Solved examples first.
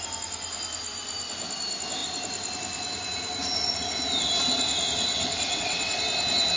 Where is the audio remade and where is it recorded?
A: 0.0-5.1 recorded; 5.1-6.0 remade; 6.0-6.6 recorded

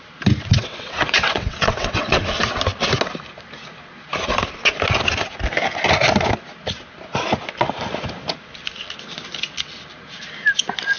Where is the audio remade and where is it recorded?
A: 0.0-0.4 recorded; 0.4-2.2 remade; 2.2-11.0 recorded

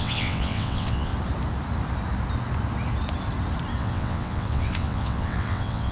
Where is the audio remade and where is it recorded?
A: 0.0-1.1 remade; 1.1-3.8 recorded; 3.8-5.9 remade

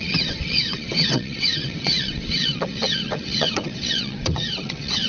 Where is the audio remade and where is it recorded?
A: 0.0-5.1 remade

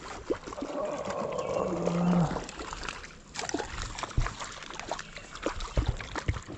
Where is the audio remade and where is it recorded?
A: 0.0-6.6 recorded

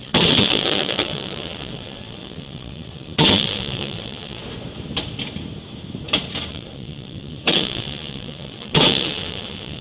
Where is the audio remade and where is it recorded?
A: 0.0-4.4 remade; 4.4-6.5 recorded; 6.5-9.8 remade